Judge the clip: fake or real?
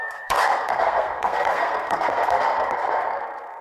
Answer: fake